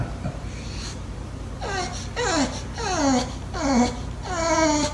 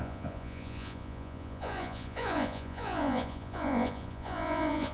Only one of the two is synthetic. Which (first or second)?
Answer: second